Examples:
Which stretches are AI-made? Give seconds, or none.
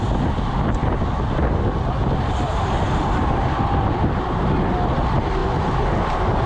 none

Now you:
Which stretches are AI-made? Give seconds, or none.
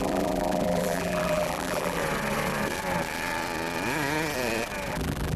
0.0-2.0 (vocoder, BigVGAN v2); 4.9-5.4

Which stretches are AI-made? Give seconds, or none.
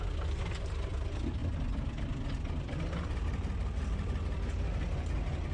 none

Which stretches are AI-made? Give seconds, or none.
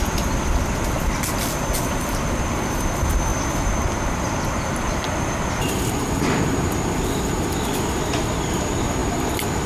none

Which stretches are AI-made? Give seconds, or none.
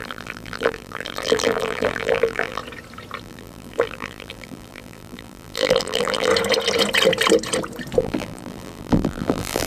0.0-2.6 (vocoder, BigVGAN v2); 3.2-6.3; 8.0-9.7